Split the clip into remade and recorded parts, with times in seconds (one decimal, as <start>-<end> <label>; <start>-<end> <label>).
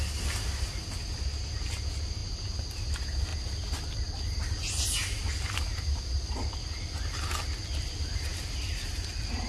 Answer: 0.0-9.5 recorded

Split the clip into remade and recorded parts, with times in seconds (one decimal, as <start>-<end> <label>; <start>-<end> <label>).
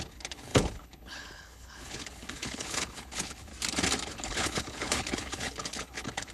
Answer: 0.0-3.5 remade; 3.5-4.1 recorded; 4.1-6.3 remade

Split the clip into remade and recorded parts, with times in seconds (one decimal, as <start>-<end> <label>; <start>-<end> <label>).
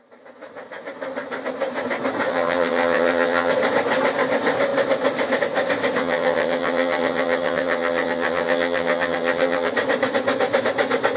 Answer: 0.0-2.3 recorded; 2.3-3.5 remade; 3.5-6.0 recorded; 6.0-9.7 remade; 9.7-11.2 recorded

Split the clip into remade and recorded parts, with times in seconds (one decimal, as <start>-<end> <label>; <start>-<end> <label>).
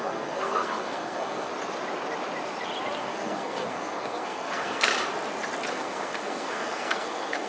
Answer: 0.0-1.5 remade; 1.5-3.0 recorded; 3.0-4.9 remade; 4.9-5.7 recorded; 5.7-7.5 remade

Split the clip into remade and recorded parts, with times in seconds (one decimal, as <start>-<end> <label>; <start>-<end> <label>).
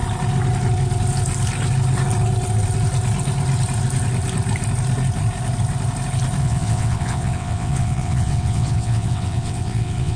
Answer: 0.0-6.4 recorded; 6.4-10.2 remade